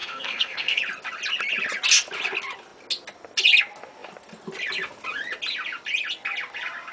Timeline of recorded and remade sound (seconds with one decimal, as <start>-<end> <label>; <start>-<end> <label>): 0.0-0.8 remade; 0.8-6.9 recorded